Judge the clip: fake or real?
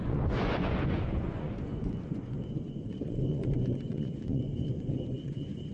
fake